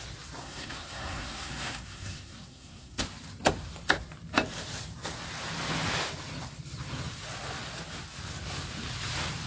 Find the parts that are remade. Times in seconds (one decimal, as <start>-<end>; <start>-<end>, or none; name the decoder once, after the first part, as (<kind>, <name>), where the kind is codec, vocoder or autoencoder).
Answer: 0.4-3.0 (codec, SNAC)